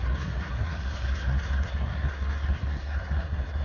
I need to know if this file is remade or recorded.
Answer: remade